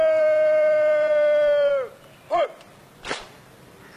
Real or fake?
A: fake